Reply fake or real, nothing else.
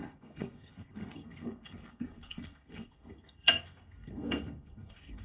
fake